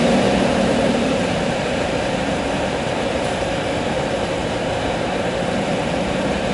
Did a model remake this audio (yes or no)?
yes